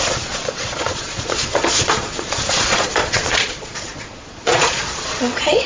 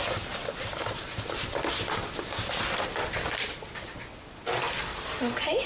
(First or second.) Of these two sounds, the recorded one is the second